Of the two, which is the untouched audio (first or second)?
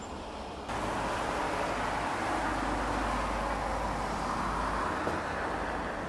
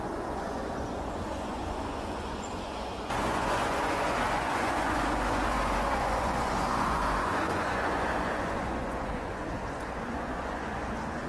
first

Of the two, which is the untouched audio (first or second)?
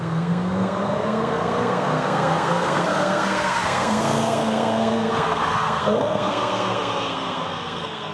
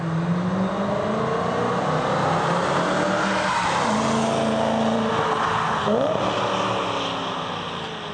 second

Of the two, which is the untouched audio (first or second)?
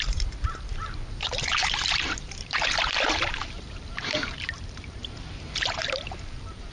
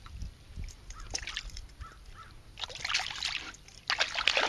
second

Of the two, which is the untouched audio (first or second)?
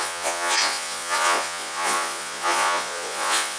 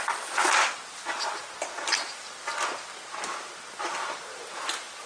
second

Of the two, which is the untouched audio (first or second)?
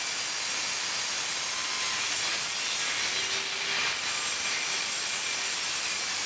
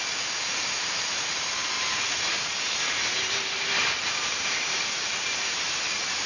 first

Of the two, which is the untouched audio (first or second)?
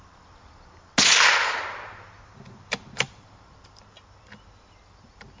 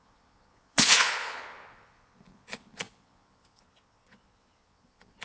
first